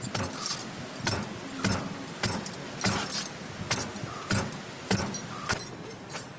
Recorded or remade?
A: recorded